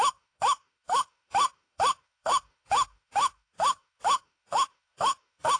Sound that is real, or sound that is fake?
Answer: fake